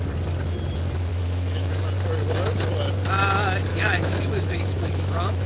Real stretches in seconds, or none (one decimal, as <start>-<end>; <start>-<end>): 0.0-1.1; 1.7-3.7